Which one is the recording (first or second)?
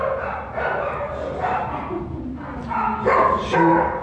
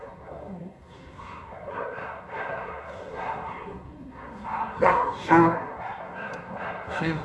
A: first